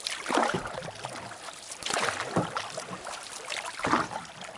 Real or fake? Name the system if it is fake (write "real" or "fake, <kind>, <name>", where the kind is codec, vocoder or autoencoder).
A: real